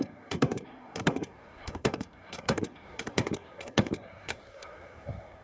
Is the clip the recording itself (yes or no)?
no